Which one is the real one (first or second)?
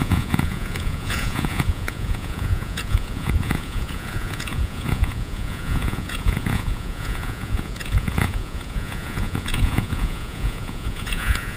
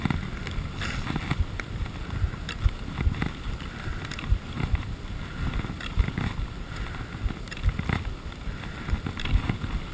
second